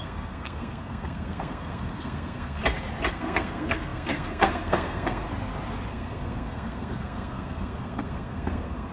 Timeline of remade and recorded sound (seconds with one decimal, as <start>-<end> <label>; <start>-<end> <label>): 0.0-2.6 remade; 2.6-3.1 recorded; 3.1-5.3 remade; 5.3-5.9 recorded; 5.9-8.9 remade